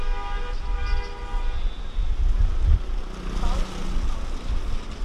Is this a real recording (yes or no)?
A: yes